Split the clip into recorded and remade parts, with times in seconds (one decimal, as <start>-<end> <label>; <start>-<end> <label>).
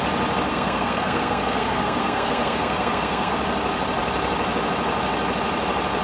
0.0-0.5 recorded; 0.5-3.3 remade; 3.3-6.0 recorded